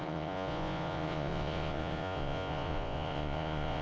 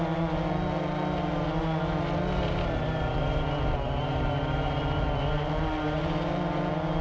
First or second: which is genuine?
second